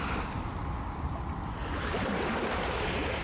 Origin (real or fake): real